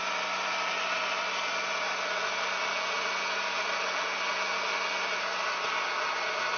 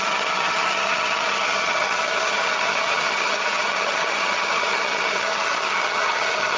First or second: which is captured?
first